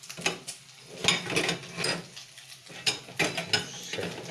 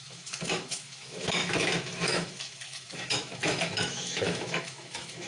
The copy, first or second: second